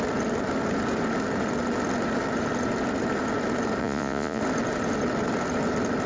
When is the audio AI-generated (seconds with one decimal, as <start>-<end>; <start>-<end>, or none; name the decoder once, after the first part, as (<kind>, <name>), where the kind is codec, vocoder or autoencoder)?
3.8-4.4 (vocoder, Vocos)